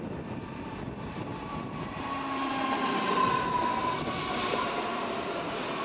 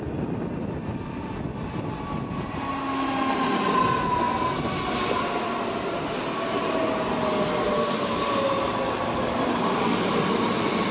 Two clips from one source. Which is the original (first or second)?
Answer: second